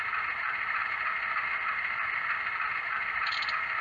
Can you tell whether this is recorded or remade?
recorded